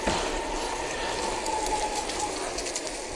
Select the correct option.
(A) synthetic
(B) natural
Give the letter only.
B